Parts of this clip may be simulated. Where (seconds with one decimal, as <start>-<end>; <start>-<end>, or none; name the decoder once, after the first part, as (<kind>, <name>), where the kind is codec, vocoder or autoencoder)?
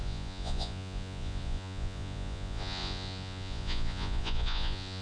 0.0-5.0 (vocoder, Vocos)